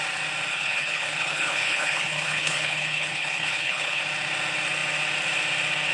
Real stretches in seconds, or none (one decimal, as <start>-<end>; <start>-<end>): 0.0-0.5; 4.0-5.9